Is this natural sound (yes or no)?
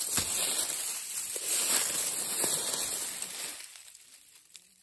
yes